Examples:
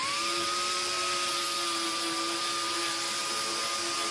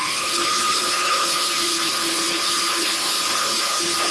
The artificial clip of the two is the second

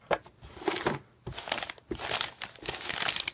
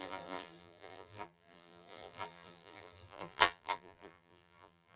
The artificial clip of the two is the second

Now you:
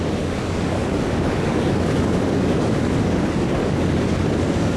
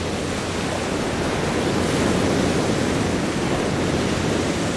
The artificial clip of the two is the first